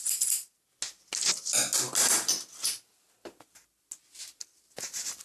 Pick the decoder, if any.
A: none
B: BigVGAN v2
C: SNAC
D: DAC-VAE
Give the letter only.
A